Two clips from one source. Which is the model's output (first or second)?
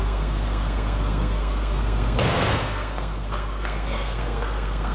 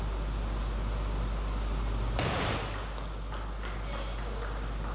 first